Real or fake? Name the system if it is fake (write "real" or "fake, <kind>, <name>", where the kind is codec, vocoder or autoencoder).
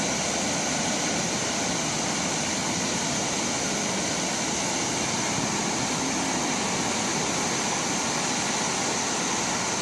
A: real